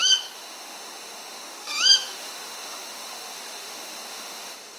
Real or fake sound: fake